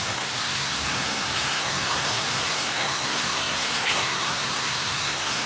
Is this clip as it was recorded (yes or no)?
no